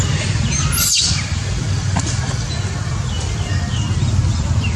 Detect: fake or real real